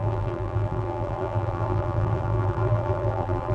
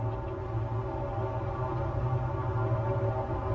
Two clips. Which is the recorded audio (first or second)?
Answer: second